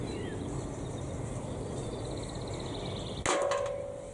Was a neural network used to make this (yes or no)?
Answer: no